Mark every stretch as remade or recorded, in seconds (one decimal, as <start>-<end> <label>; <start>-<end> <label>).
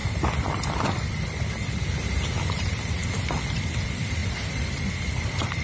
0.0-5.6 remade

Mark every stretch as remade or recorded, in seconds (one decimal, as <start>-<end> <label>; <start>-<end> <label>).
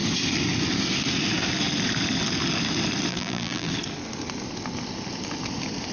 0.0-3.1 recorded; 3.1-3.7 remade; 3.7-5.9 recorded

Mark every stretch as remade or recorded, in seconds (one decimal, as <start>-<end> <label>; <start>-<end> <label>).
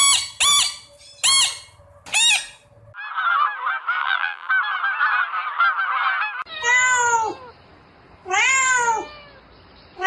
0.0-4.0 recorded; 4.0-4.5 remade; 4.5-10.1 recorded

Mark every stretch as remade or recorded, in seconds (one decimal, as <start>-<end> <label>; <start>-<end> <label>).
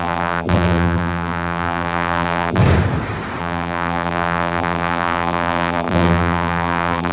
0.0-2.6 remade; 2.6-3.4 recorded; 3.4-7.1 remade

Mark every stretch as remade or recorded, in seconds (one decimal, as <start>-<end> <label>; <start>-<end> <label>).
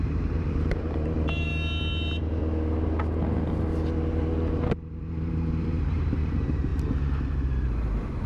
0.0-1.5 remade; 1.5-5.3 recorded; 5.3-6.7 remade; 6.7-7.3 recorded; 7.3-8.3 remade